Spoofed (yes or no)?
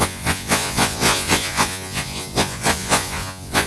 yes